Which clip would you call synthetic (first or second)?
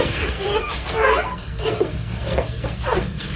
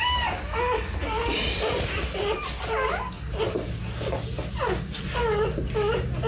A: first